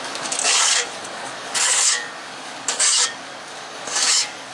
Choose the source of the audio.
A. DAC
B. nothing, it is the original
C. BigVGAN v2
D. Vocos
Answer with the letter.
A